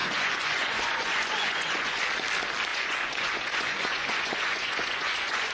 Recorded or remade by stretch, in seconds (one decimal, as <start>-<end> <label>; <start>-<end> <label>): 0.0-2.0 remade; 2.0-2.7 recorded; 2.7-5.5 remade